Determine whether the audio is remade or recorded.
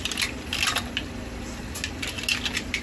recorded